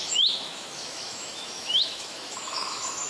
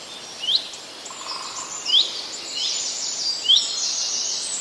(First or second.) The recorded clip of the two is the second